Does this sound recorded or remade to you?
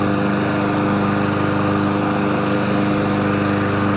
recorded